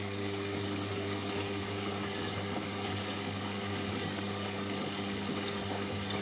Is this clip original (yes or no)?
no